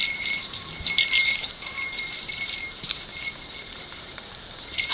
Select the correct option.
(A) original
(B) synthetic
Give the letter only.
B